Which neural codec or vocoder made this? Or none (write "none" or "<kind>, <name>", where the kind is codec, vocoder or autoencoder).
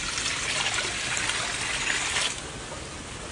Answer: none